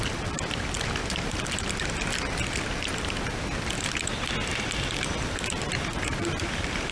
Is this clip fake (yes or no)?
yes